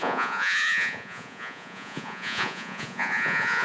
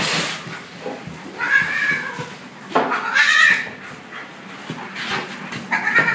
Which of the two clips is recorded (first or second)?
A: second